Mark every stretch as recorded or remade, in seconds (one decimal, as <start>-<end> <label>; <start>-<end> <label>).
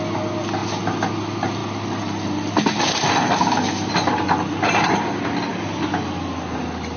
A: 0.0-7.0 recorded